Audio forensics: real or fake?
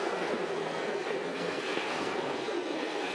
fake